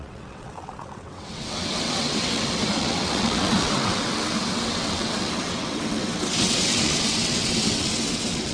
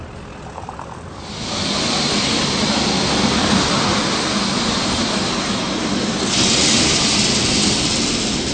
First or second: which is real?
second